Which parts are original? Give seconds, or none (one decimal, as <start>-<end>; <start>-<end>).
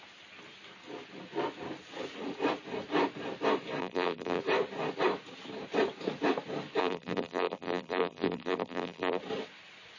0.0-3.8; 4.4-6.8; 9.2-10.0